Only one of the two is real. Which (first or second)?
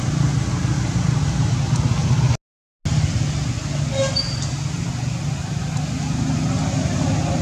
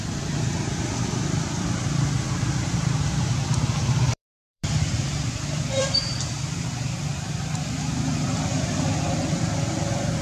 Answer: first